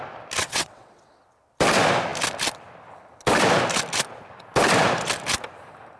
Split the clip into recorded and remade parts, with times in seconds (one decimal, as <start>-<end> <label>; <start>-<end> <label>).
0.0-0.4 recorded; 0.4-1.1 remade; 1.1-6.0 recorded